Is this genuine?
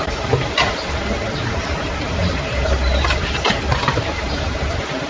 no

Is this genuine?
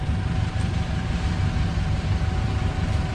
no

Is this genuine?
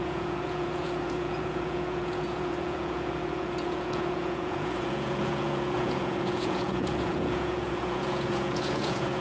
no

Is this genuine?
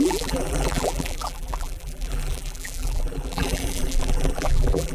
no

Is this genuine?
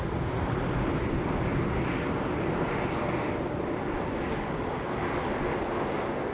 yes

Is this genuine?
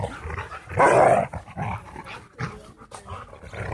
yes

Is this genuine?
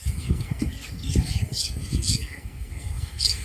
no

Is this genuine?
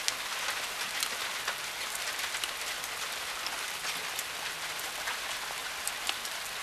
yes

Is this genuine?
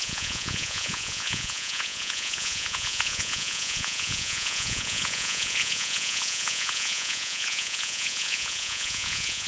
no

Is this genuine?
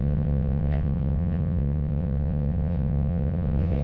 no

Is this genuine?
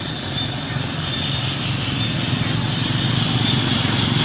yes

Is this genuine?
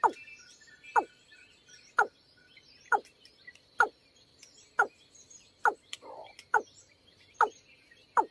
yes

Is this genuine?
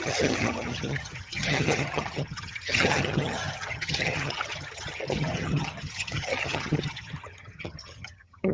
no